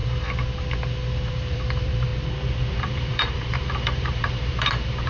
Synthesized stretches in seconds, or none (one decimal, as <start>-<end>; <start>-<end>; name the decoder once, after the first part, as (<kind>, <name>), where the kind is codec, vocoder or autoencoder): 1.3-2.1 (vocoder, BigVGAN v2); 2.7-5.1